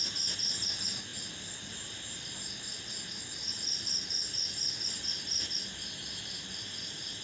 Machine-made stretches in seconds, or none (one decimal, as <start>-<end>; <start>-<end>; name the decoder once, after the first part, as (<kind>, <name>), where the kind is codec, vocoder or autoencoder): none